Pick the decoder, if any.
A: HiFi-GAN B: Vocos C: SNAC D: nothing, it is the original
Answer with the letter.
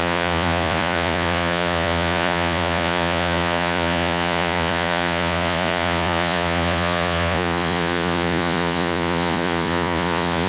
B